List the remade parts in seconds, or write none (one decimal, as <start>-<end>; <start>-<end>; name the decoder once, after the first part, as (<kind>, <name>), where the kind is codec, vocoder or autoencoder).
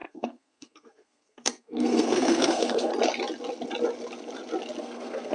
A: 0.0-2.9 (codec, SNAC); 4.8-5.3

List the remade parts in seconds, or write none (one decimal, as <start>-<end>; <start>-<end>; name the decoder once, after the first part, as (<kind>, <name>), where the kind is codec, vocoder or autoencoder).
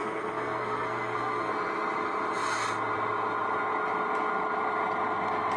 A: 0.0-1.5 (codec, SNAC)